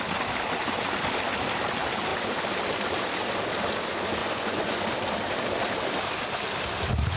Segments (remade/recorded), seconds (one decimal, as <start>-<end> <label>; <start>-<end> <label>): 0.0-4.2 recorded; 4.2-4.8 remade; 4.8-7.2 recorded